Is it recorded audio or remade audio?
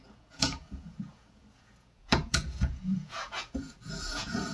remade